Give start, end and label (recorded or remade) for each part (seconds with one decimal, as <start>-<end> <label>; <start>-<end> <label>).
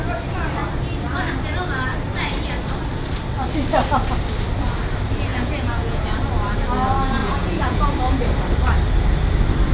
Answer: 0.0-5.3 recorded; 5.3-6.2 remade; 6.2-7.2 recorded; 7.2-7.9 remade; 7.9-9.7 recorded